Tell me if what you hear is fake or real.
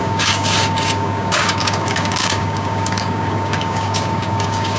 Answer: fake